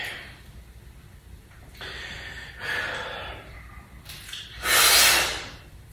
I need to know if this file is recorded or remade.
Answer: recorded